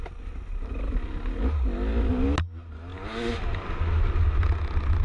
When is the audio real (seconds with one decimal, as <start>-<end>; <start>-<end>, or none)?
0.0-5.0